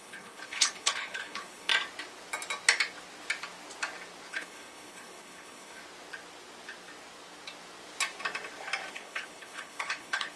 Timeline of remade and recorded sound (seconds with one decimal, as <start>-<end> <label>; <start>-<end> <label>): 0.0-1.7 remade; 1.7-4.3 recorded; 4.3-5.8 remade; 5.8-8.9 recorded; 8.9-10.4 remade